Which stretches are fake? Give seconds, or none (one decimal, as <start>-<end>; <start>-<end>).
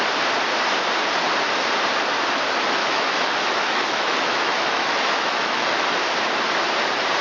2.8-5.8